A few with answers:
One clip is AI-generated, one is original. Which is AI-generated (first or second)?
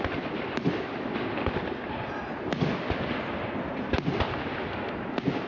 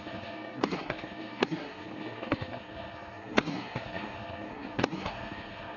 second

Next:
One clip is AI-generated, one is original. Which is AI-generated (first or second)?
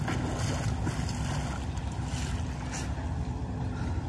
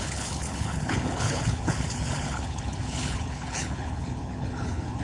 second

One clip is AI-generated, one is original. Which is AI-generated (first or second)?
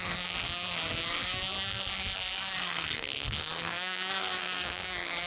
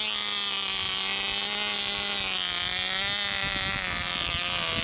first